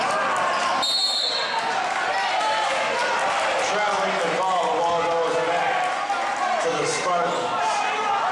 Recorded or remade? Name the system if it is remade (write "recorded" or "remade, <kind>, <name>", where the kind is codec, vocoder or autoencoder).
recorded